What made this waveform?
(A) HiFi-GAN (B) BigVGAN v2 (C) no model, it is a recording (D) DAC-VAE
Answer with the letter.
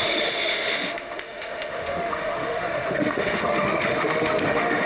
D